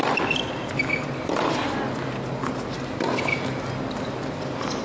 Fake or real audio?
real